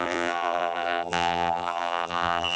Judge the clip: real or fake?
fake